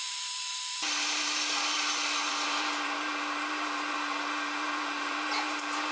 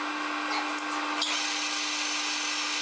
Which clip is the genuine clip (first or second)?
second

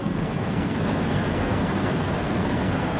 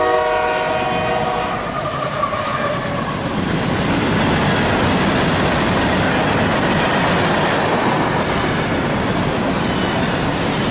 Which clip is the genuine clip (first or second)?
second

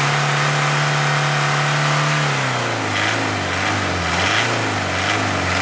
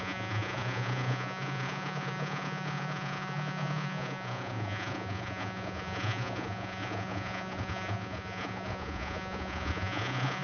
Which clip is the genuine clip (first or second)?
first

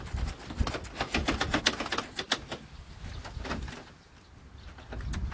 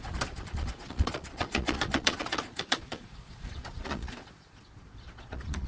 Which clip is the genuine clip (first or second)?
first